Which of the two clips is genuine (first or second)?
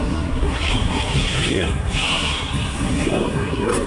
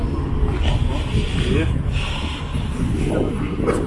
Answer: second